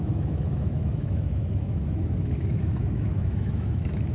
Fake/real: fake